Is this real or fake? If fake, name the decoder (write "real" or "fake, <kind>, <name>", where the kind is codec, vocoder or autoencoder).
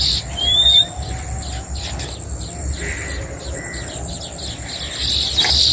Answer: real